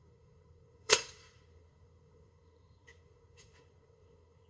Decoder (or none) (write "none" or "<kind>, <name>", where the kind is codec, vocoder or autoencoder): codec, SNAC